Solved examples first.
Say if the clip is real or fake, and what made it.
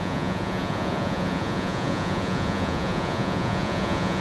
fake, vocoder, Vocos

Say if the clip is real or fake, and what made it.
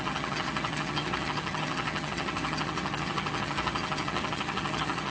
fake, vocoder, HiFi-GAN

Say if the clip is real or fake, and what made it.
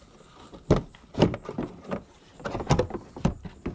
real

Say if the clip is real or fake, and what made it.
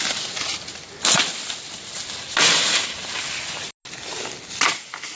real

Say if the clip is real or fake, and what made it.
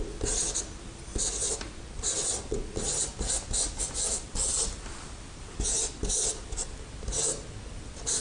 real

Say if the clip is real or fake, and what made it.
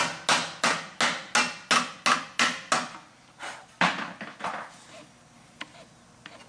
real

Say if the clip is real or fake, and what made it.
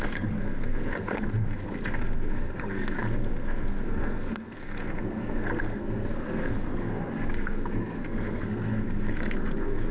fake, codec, SNAC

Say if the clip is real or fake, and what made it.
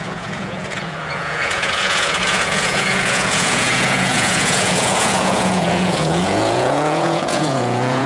fake, vocoder, Vocos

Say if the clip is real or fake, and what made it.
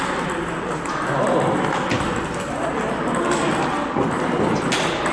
real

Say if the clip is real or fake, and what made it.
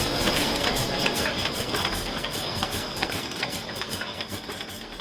fake, codec, SNAC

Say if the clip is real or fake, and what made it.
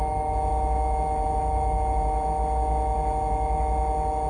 real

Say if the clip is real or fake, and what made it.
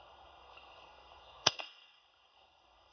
fake, codec, SNAC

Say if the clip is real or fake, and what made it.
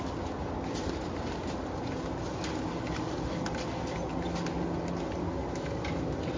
real